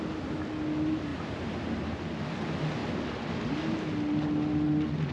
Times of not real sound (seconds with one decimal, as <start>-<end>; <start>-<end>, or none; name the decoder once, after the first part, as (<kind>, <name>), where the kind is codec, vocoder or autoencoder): 1.1-2.2 (vocoder, BigVGAN v2)